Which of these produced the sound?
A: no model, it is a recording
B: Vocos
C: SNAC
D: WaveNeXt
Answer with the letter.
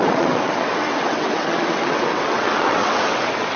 D